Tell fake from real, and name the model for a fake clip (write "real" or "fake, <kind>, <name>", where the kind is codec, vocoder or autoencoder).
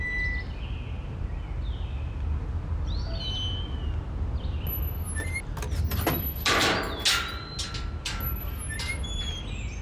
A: real